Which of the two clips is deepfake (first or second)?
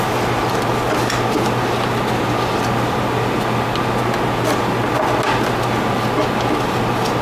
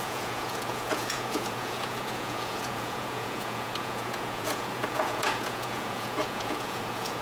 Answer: second